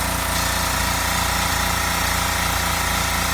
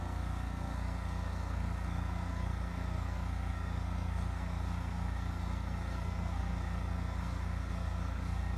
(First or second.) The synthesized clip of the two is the second